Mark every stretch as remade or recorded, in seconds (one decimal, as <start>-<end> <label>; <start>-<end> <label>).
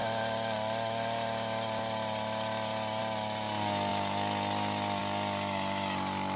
0.0-6.4 recorded